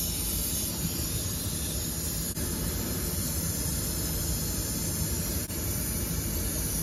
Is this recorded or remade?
recorded